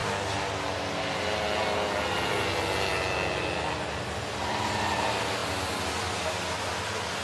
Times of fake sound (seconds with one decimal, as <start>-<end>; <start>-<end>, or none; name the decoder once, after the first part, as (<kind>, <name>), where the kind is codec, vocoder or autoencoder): none